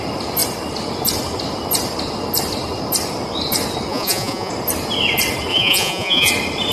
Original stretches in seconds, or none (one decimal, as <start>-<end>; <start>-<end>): 0.0-3.9; 4.5-5.5; 6.3-6.7

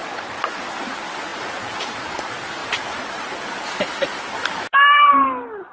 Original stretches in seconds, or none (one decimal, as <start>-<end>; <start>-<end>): 0.6-5.7

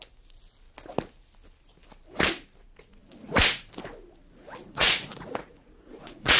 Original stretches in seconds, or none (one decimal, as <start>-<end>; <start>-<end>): 0.0-4.6

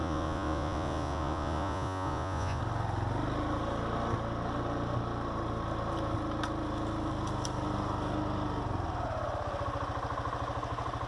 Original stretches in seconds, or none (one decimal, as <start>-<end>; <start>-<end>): 2.6-11.1

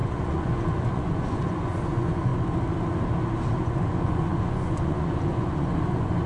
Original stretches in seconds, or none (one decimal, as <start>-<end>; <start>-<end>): 2.3-3.6

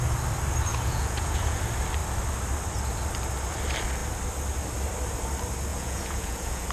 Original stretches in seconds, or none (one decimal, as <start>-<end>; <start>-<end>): 0.0-0.7; 1.6-5.7